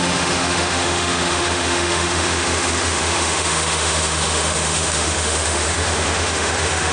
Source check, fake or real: fake